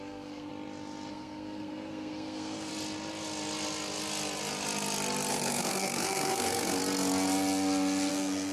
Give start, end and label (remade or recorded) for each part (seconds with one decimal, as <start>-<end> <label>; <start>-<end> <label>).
0.0-0.5 remade; 0.5-1.1 recorded; 1.1-2.7 remade; 2.7-5.3 recorded; 5.3-6.8 remade; 6.8-8.1 recorded; 8.1-8.5 remade